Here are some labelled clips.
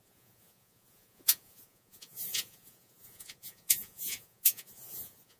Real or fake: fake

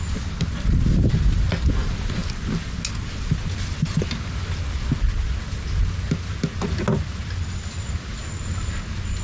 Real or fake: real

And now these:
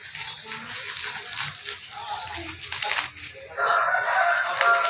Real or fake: real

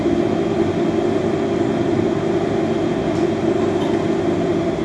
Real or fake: real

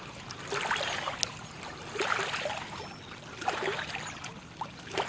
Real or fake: real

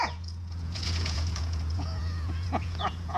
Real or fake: fake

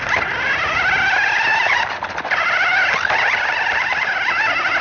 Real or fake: real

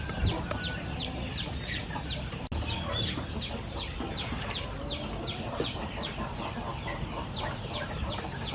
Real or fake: real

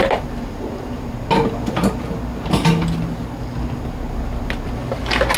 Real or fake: real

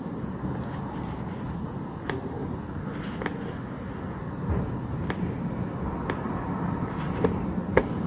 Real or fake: real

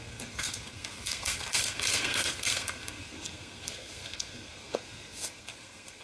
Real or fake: fake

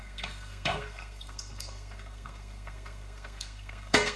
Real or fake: fake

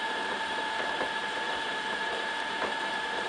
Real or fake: fake